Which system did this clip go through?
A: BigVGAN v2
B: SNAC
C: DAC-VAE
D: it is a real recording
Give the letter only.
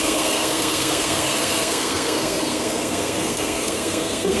B